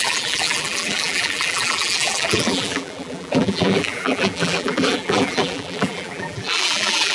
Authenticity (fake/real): fake